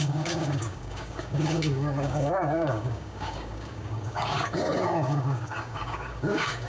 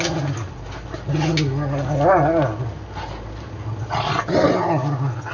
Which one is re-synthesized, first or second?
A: first